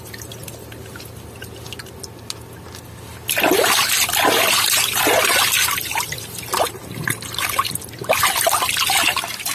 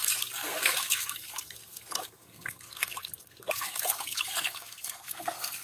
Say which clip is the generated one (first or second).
second